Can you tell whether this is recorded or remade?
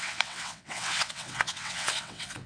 remade